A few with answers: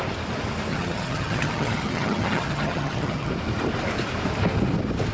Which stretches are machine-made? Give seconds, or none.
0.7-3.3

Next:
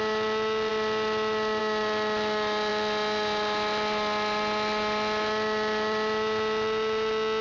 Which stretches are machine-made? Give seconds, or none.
none

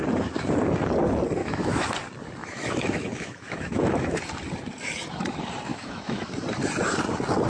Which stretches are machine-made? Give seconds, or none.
1.4-1.9; 2.4-4.2; 5.7-6.3

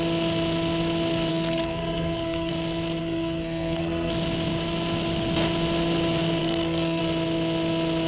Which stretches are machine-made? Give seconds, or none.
1.3-2.5; 3.0-4.1; 6.4-7.0